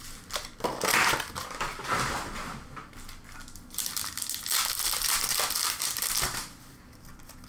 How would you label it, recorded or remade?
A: recorded